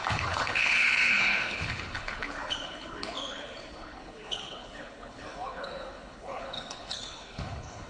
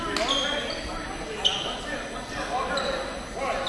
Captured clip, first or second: second